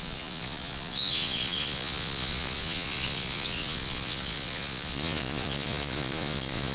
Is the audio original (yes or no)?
no